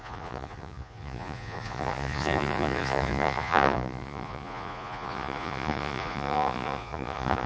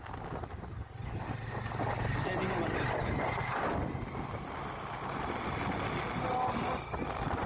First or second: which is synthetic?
first